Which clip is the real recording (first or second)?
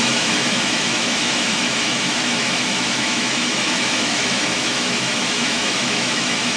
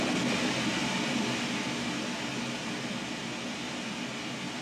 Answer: second